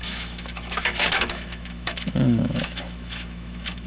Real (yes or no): no